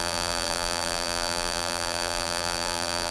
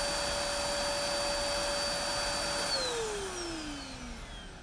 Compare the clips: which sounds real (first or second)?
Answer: second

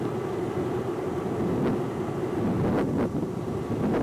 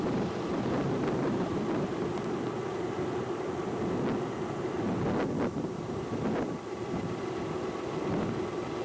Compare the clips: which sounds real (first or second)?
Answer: first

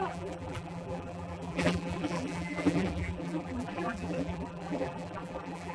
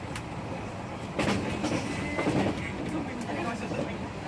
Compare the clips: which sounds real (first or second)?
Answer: second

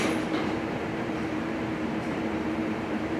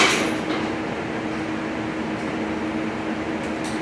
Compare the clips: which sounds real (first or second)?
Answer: second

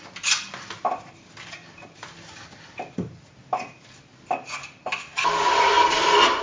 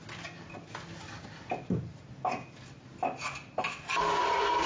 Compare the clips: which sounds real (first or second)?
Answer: second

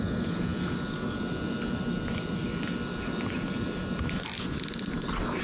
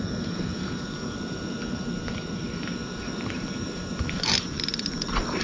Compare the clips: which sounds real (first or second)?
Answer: first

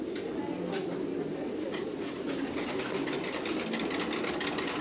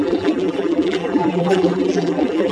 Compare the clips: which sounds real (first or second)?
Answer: first